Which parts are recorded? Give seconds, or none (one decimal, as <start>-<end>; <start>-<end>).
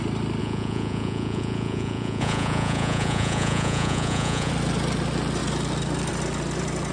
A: 0.0-0.4; 4.5-6.9